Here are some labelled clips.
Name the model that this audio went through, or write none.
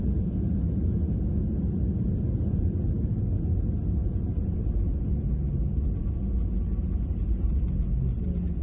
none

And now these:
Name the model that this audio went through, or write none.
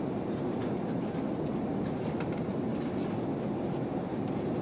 none